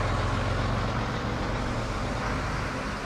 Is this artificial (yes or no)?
no